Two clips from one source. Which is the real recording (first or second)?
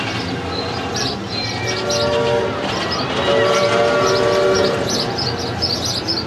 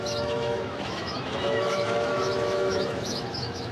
first